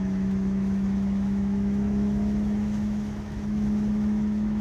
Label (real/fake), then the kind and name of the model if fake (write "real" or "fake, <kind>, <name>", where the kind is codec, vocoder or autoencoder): fake, autoencoder, DAC-VAE